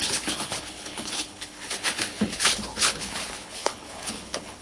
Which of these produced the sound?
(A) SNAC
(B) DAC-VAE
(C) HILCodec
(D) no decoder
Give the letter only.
C